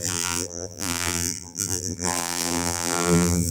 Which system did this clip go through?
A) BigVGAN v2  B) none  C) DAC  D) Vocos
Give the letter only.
A